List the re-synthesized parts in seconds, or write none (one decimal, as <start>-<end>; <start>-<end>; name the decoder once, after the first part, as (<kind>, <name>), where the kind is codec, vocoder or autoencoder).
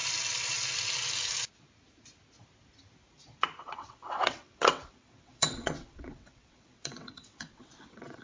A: 3.6-8.2 (vocoder, WaveNeXt)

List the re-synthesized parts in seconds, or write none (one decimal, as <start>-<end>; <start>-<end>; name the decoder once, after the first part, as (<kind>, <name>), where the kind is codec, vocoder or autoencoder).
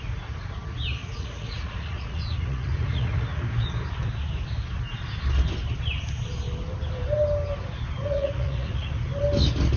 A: 1.0-3.4 (vocoder, Vocos); 8.0-8.9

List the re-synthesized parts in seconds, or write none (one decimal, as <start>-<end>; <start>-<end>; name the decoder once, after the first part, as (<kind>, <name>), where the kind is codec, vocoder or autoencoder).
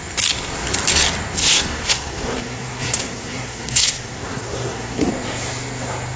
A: 1.4-5.1 (codec, SNAC)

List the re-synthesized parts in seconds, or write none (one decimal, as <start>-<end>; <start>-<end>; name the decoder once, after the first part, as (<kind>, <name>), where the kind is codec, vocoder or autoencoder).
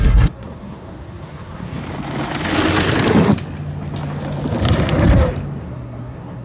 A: 0.0-1.8 (codec, SNAC); 5.6-6.4